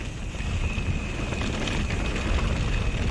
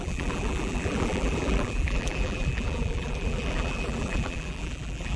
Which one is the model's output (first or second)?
second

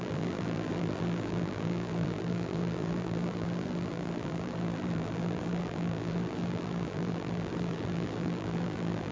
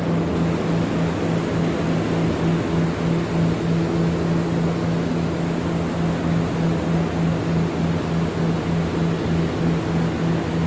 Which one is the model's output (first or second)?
first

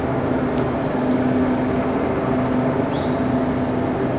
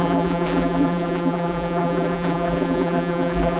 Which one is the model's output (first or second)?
second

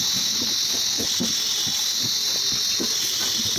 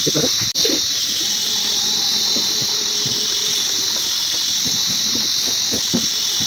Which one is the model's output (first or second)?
second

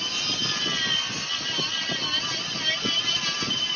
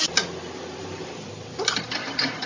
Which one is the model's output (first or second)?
second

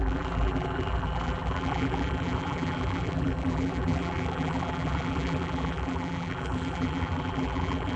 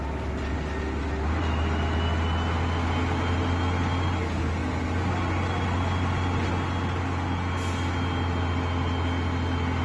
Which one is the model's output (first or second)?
first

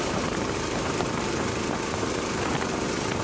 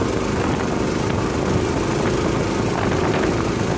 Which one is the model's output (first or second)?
first